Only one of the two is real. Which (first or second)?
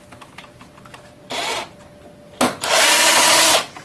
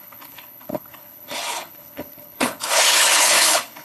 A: first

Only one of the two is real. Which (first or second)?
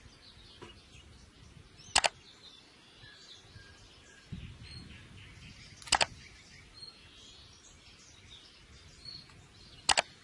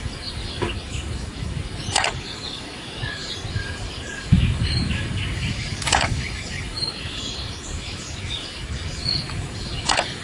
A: first